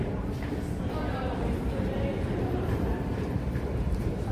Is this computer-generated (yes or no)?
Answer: yes